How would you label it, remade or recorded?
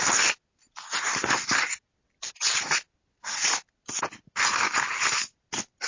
recorded